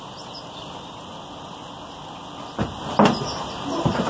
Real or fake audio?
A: real